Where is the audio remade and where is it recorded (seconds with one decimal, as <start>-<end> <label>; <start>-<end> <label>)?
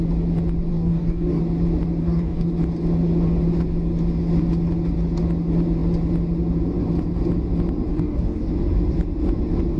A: 0.0-0.7 recorded; 0.7-1.4 remade; 1.4-2.0 recorded; 2.0-2.5 remade; 2.5-7.9 recorded; 7.9-8.5 remade; 8.5-9.8 recorded